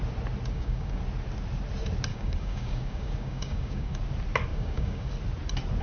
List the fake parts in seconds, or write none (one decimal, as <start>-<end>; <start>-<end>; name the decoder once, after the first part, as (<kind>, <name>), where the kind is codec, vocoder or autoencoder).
0.5-1.0 (codec, DAC); 2.1-4.0; 4.5-5.1